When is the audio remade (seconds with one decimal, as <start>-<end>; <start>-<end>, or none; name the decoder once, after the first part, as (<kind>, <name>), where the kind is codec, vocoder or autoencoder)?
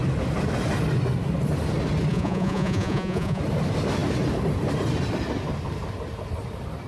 2.1-3.4 (vocoder, Vocos)